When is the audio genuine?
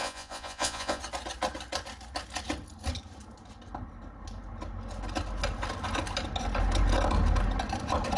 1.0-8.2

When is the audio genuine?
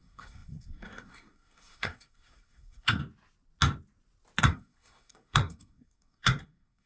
3.0-4.4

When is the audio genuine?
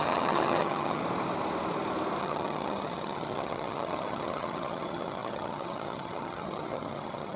1.0-2.2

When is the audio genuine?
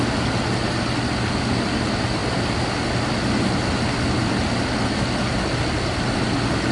0.0-6.7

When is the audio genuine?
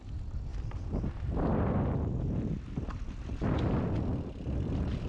0.0-5.1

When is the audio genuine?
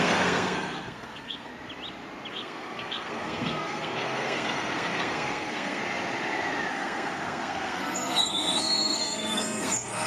1.5-2.3; 5.8-6.7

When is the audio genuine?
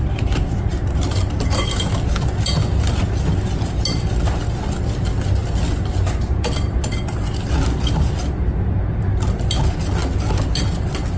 0.0-11.2